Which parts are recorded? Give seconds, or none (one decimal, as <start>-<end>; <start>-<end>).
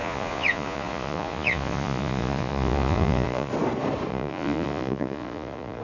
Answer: 3.5-4.1